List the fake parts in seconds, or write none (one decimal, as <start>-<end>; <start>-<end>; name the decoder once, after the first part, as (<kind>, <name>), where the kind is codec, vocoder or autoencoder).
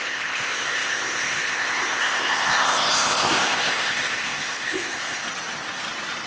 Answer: 0.0-5.2 (codec, ZipCodec)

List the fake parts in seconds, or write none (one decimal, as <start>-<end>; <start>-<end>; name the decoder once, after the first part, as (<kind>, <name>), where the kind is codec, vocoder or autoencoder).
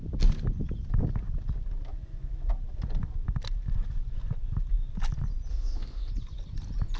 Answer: 5.5-6.1 (codec, ZipCodec)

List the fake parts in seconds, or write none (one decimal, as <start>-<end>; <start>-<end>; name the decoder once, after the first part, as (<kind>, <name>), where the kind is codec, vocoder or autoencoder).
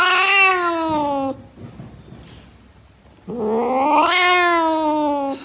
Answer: none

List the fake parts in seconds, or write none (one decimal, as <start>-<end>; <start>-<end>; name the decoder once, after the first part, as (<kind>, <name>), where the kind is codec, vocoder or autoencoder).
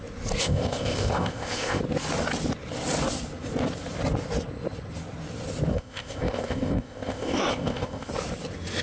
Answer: 0.4-1.8 (codec, ZipCodec); 5.7-8.1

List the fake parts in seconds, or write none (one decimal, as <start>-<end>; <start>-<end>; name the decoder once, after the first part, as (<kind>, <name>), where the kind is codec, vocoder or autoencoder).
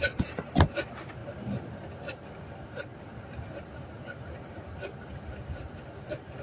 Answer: none